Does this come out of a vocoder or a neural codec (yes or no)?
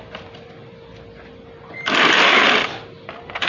no